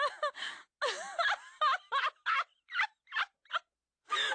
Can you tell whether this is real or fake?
real